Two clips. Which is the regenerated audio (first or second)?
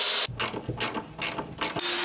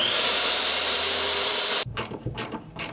second